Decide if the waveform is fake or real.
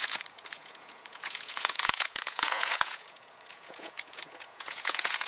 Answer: fake